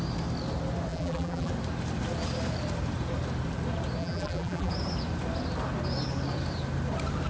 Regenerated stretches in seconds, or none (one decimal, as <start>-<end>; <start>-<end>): 0.9-1.5; 4.0-4.7